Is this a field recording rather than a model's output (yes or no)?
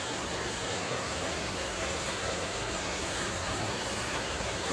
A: no